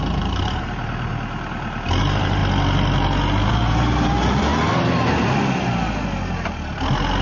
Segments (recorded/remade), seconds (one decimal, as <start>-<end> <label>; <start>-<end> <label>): 0.0-1.1 remade; 1.1-2.0 recorded; 2.0-2.4 remade; 2.4-3.5 recorded; 3.5-4.5 remade; 4.5-7.2 recorded